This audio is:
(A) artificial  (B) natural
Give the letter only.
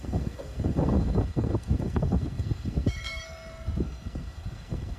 A